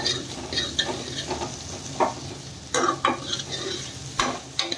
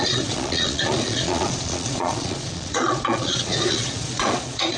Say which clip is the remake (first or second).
second